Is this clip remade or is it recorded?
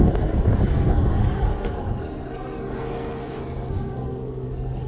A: remade